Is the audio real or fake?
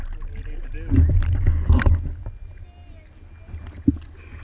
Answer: real